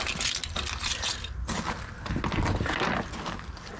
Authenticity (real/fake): real